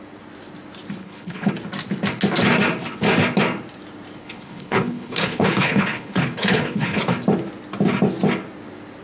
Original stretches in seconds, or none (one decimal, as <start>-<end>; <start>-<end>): 0.0-1.0; 1.5-4.2; 7.0-9.0